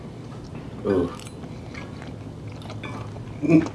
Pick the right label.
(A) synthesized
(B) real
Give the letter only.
B